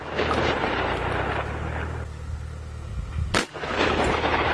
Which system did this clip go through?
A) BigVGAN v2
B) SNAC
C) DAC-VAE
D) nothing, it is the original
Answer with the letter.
D